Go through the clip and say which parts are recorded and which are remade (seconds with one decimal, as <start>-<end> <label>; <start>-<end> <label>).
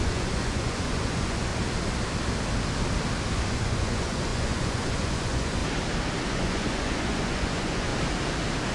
0.0-1.5 remade; 1.5-3.5 recorded; 3.5-5.6 remade; 5.6-6.3 recorded; 6.3-7.9 remade; 7.9-8.7 recorded